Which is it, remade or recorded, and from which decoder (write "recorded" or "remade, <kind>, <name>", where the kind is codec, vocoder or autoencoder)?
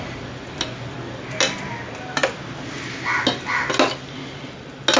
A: recorded